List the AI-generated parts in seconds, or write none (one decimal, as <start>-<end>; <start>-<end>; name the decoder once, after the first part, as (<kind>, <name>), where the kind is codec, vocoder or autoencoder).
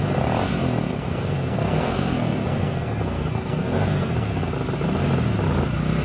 0.9-4.5 (codec, SNAC)